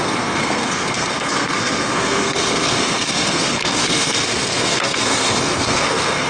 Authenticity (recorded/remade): remade